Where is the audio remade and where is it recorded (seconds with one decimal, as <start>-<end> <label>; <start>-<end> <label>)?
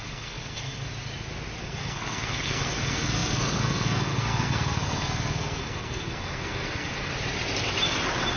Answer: 0.0-0.9 remade; 0.9-1.6 recorded; 1.6-7.1 remade; 7.1-8.4 recorded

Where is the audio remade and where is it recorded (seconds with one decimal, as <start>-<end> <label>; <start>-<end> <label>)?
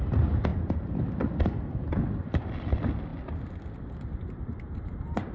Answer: 0.0-5.3 recorded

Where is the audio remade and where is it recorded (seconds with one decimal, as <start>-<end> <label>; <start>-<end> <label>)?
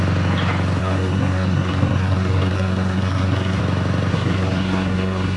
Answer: 0.0-0.8 recorded; 0.8-3.6 remade; 3.6-4.1 recorded; 4.1-5.4 remade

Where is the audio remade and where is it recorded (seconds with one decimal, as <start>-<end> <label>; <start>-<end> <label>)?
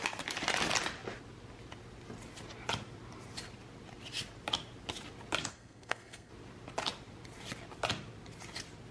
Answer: 0.0-5.5 recorded; 5.5-6.3 remade; 6.3-8.9 recorded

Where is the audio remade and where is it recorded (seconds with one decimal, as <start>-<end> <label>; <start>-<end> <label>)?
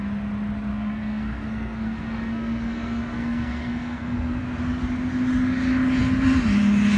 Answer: 0.0-0.7 recorded; 0.7-4.4 remade; 4.4-7.0 recorded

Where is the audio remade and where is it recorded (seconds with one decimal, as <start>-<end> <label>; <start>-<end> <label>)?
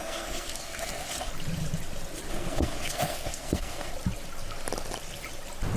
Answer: 0.0-1.3 remade; 1.3-2.3 recorded; 2.3-3.9 remade; 3.9-5.8 recorded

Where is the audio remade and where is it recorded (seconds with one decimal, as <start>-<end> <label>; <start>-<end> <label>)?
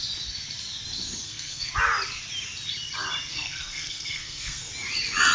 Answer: 0.0-1.2 recorded; 1.2-1.7 remade; 1.7-3.3 recorded; 3.3-4.7 remade; 4.7-5.3 recorded